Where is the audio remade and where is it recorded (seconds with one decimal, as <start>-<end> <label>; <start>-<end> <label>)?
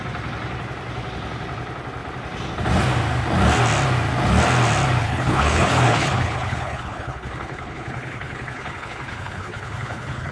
0.0-5.0 recorded; 5.0-10.3 remade